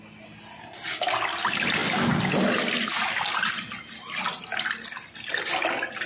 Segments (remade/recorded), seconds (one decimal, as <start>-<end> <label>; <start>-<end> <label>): 0.0-6.1 recorded